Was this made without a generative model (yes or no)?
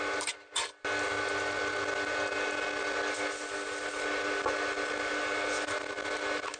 yes